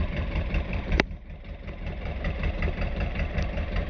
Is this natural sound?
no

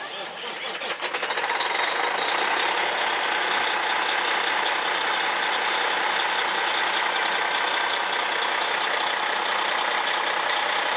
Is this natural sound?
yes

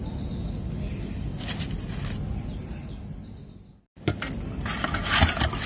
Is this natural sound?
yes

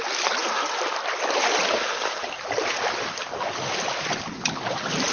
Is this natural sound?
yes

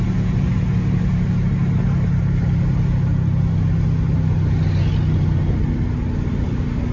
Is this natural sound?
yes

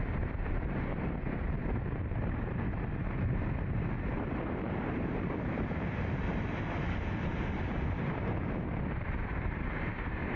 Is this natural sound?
no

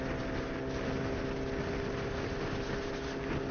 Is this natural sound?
yes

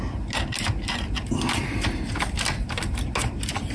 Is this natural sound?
yes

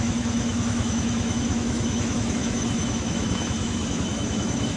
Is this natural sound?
no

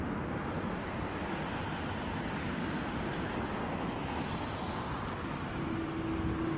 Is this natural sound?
yes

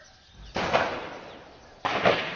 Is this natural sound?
no